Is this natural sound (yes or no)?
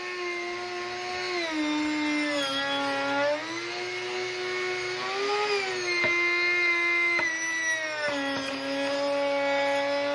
yes